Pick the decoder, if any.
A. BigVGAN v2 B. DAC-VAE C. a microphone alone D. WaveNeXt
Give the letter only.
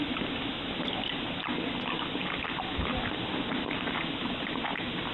C